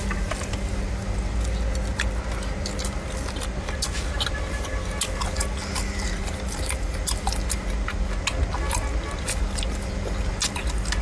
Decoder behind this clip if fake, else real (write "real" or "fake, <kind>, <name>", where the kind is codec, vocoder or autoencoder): real